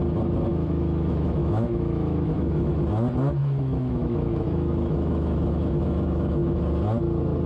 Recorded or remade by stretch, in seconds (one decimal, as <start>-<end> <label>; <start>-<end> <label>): 0.0-0.5 recorded; 0.5-2.7 remade; 2.7-3.4 recorded; 3.4-6.6 remade; 6.6-7.5 recorded